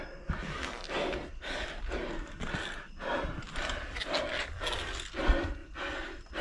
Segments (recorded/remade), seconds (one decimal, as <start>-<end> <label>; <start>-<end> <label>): 0.0-5.6 recorded; 5.6-6.4 remade